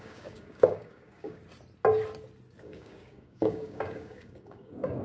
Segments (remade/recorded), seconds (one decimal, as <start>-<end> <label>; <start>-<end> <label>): 0.0-1.4 remade; 1.4-2.6 recorded; 2.6-5.0 remade